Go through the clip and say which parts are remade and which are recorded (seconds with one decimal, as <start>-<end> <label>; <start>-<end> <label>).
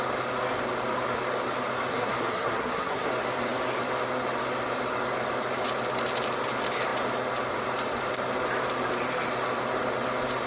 0.0-1.9 recorded; 1.9-3.1 remade; 3.1-10.5 recorded